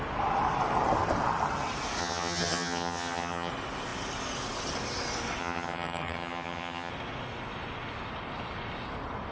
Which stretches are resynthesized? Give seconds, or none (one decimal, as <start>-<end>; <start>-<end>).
2.0-3.5; 5.4-6.9